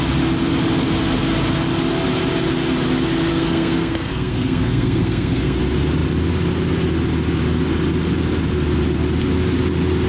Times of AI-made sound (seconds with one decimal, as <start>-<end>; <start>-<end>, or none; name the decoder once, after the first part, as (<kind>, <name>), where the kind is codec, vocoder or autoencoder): 3.3-5.6 (codec, SNAC)